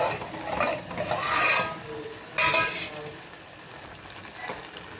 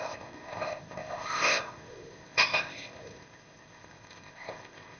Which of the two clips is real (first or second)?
first